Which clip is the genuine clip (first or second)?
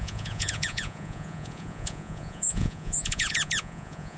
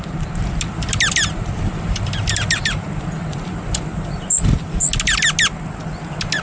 second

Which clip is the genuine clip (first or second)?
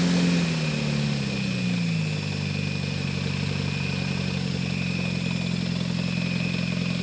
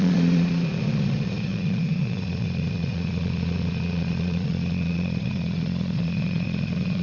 first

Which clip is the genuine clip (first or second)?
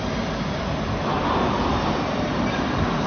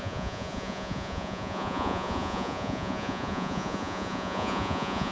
first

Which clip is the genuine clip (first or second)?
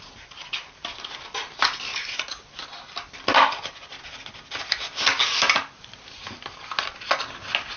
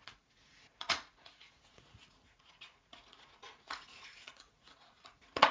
first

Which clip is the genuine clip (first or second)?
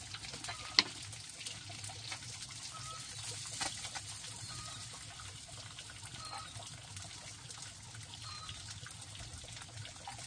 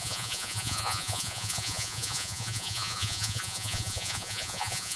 first